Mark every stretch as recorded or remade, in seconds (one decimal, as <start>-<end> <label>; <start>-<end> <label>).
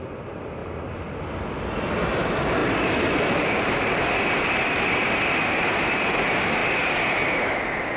0.0-0.6 recorded; 0.6-1.2 remade; 1.2-8.0 recorded